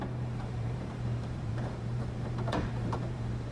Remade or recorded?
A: remade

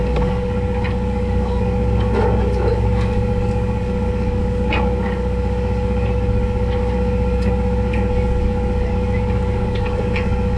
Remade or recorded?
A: remade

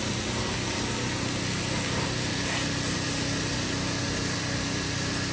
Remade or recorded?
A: recorded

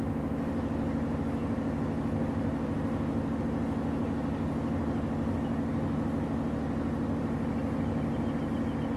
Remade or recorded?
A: recorded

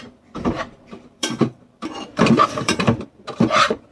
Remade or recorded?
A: remade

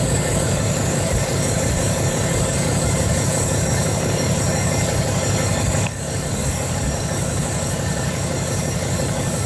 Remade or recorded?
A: remade